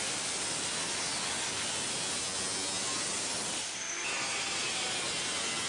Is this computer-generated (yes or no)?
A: no